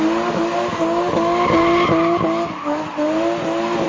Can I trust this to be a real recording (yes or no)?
yes